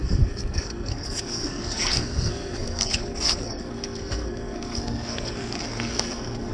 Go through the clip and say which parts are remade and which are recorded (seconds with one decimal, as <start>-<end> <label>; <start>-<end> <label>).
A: 0.0-6.5 remade